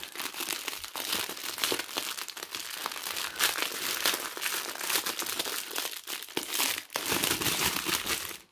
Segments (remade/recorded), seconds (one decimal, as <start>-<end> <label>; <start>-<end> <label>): 0.0-8.5 recorded